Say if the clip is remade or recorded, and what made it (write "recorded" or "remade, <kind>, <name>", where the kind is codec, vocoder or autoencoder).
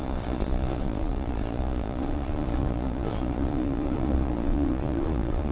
remade, vocoder, Vocos